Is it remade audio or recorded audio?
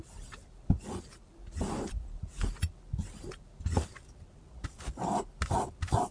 recorded